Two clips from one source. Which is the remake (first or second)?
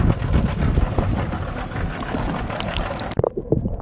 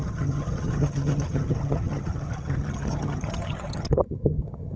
second